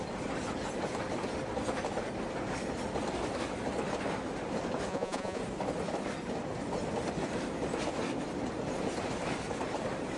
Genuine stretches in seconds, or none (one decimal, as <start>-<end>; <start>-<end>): 0.0-4.9; 5.4-10.2

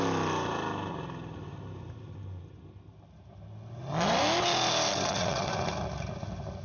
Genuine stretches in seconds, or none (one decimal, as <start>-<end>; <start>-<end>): 0.0-4.9; 5.5-6.6

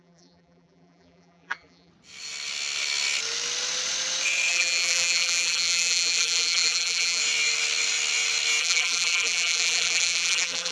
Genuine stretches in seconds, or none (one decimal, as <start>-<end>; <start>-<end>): 1.9-4.5; 7.2-8.6

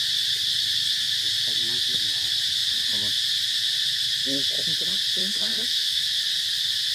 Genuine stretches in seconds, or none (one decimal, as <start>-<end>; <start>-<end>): 0.0-5.2; 6.0-6.9

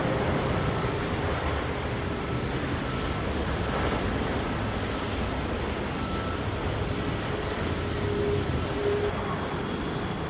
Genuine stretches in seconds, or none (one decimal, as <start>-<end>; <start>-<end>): 0.0-10.3

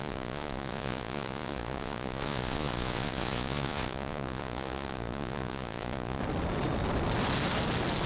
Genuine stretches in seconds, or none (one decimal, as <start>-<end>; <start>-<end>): 6.2-8.1